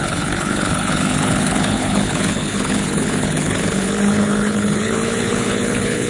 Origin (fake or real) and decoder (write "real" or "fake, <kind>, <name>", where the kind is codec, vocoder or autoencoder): fake, codec, HILCodec